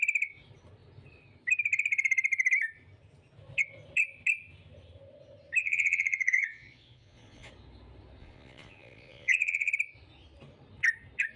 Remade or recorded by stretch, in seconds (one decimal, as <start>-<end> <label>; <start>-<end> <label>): 0.0-5.6 recorded; 5.6-7.5 remade; 7.5-8.2 recorded; 8.2-9.7 remade; 9.7-11.4 recorded